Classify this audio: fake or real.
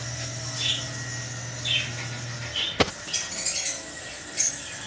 real